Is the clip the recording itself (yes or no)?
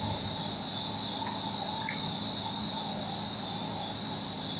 yes